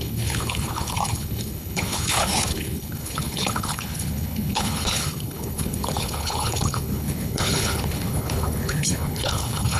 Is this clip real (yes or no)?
no